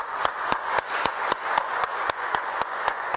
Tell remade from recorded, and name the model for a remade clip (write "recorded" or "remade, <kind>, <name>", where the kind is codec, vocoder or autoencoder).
remade, vocoder, Vocos